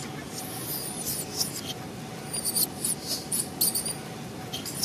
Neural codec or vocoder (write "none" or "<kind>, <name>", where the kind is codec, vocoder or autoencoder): none